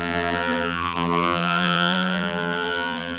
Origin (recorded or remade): remade